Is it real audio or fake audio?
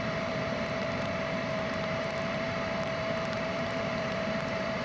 fake